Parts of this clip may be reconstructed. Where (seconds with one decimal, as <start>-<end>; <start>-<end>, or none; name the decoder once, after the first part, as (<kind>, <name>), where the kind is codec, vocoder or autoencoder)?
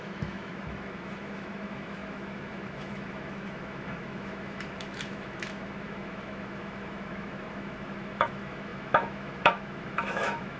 0.0-10.6 (autoencoder, DAC-VAE)